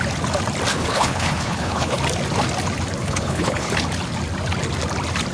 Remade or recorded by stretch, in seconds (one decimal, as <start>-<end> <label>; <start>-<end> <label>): 0.0-0.7 recorded; 0.7-2.0 remade; 2.0-3.0 recorded; 3.0-3.7 remade; 3.7-5.3 recorded